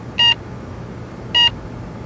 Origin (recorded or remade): recorded